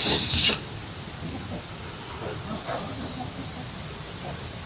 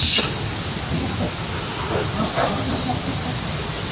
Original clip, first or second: second